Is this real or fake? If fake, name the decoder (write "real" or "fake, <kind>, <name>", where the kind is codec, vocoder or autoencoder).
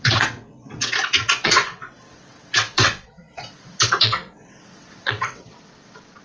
fake, vocoder, WaveNeXt